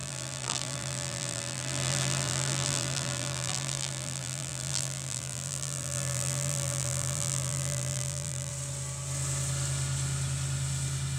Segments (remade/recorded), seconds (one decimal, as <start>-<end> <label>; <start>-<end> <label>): 0.0-8.5 remade; 8.5-11.2 recorded